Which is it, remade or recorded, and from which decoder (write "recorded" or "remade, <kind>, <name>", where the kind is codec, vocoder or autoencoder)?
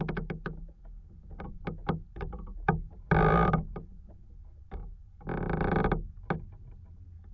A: recorded